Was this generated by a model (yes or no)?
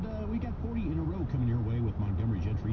no